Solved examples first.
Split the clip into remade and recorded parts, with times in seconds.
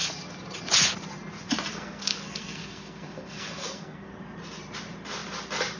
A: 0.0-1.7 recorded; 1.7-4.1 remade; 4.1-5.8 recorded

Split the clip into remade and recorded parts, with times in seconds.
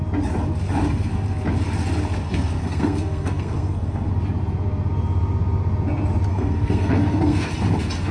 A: 0.0-2.2 recorded; 2.2-4.1 remade; 4.1-6.3 recorded; 6.3-7.5 remade; 7.5-8.1 recorded